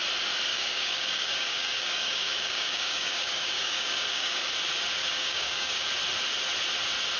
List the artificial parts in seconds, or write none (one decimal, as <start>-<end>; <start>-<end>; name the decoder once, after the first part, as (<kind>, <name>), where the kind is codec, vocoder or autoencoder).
0.5-4.5 (codec, DAC); 5.0-5.9